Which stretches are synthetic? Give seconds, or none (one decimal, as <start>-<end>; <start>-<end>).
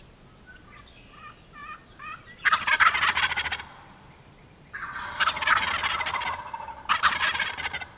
none